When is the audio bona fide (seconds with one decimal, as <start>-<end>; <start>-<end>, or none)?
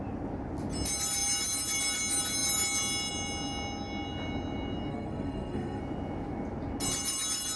0.0-4.9; 5.8-7.6